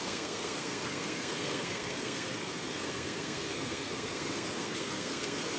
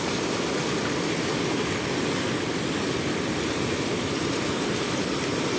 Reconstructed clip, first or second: first